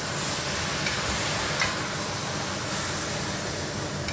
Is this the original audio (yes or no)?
yes